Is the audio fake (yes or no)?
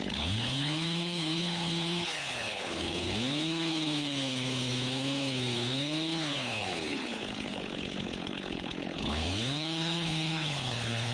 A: yes